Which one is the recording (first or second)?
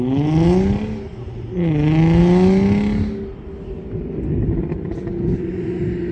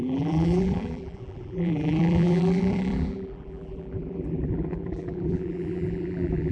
first